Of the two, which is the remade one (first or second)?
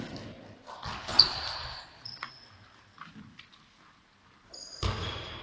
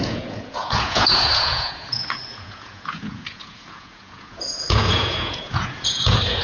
second